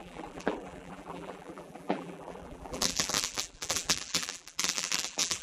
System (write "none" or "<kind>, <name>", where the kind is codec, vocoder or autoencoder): vocoder, BigVGAN v2